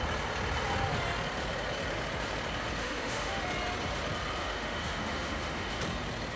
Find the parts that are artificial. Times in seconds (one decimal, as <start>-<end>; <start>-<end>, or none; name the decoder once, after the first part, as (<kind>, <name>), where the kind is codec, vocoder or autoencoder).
2.8-3.4 (autoencoder, DAC-VAE); 4.4-5.8